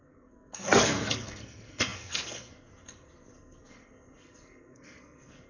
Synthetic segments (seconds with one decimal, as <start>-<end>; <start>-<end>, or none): 0.0-5.5